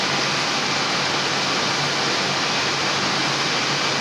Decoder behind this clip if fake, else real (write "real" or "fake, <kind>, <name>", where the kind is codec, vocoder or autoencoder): real